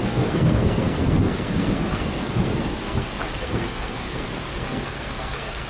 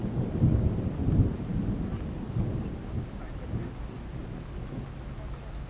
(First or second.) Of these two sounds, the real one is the second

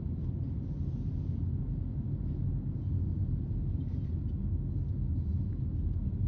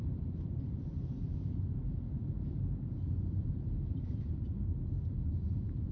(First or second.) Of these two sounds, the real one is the first